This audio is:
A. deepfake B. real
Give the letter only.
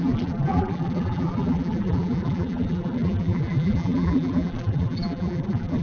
A